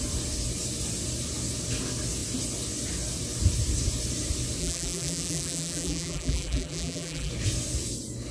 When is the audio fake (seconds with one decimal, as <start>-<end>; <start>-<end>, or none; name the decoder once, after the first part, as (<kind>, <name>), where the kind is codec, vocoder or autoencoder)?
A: 4.6-7.3 (vocoder, BigVGAN v2)